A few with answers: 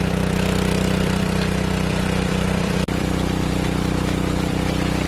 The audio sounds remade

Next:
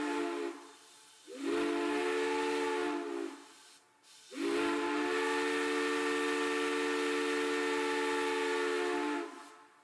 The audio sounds recorded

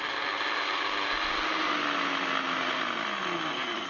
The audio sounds recorded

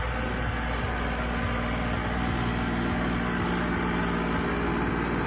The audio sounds recorded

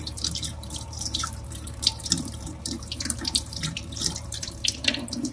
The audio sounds remade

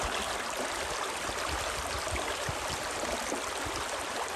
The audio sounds recorded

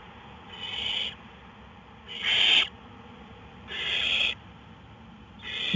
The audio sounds recorded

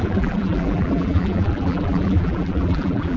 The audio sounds remade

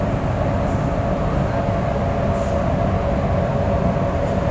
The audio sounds recorded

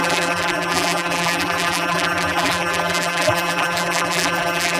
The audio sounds remade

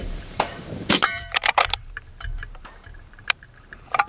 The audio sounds remade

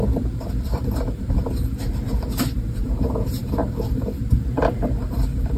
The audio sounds remade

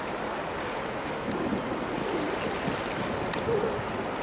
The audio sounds recorded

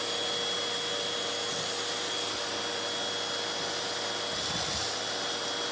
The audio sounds recorded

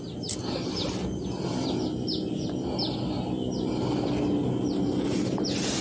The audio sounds recorded